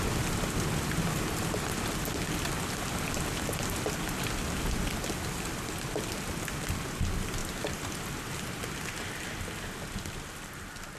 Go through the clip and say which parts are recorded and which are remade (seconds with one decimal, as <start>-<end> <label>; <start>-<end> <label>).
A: 0.0-7.4 recorded; 7.4-8.1 remade; 8.1-11.0 recorded